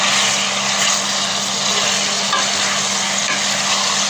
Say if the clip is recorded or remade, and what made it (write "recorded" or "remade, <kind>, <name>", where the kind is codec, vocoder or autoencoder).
recorded